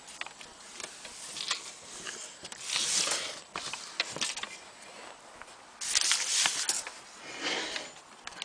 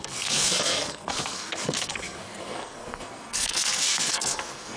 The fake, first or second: second